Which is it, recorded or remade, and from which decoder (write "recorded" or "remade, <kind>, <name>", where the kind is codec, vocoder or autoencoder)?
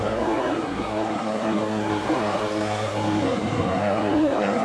remade, codec, SNAC